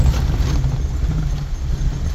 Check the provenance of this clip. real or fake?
real